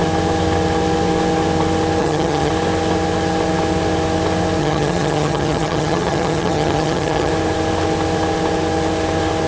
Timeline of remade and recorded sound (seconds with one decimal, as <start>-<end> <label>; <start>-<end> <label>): 0.0-2.0 recorded; 2.0-2.5 remade; 2.5-4.6 recorded; 4.6-7.3 remade; 7.3-9.5 recorded